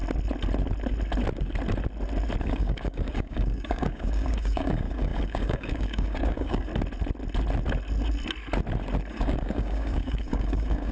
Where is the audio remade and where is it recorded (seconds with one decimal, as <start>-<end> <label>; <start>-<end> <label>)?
0.0-2.4 recorded; 2.4-6.7 remade; 6.7-9.1 recorded; 9.1-10.9 remade